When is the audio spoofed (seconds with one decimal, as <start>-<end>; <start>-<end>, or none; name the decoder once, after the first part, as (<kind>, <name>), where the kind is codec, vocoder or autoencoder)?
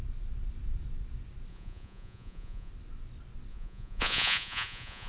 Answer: 1.5-2.7 (vocoder, Vocos); 3.5-5.1